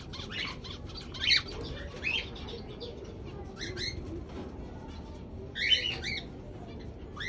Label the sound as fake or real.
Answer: real